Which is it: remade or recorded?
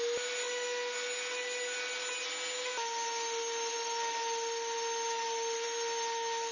recorded